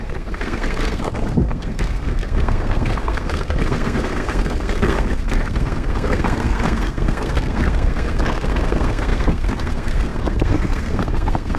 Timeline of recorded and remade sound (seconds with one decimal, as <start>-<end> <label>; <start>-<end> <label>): 0.0-11.6 remade